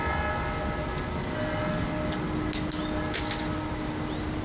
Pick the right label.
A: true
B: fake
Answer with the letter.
A